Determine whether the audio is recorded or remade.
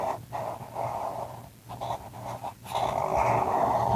recorded